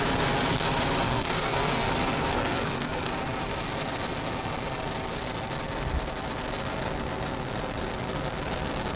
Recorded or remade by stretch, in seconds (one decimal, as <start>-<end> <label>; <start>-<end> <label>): 0.0-1.0 recorded; 1.0-1.9 remade; 1.9-2.3 recorded; 2.3-3.1 remade; 3.1-9.0 recorded